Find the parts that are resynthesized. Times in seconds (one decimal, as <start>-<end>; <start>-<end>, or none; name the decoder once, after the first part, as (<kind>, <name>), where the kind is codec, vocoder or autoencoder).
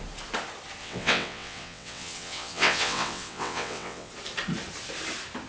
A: 0.8-4.1 (vocoder, WaveNeXt)